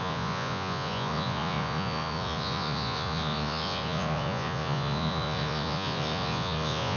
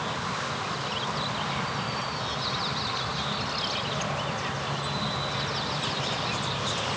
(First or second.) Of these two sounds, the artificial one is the first